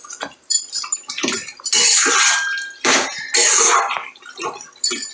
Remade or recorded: recorded